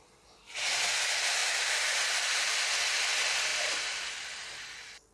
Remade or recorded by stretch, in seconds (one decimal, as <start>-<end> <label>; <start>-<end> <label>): 0.0-1.4 recorded; 1.4-2.6 remade; 2.6-5.1 recorded